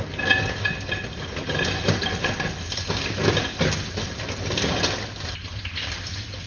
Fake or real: real